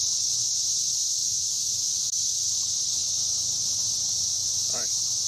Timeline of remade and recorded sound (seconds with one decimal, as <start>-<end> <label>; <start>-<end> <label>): 0.0-1.2 recorded; 1.2-2.3 remade; 2.3-5.3 recorded